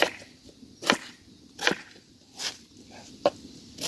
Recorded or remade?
recorded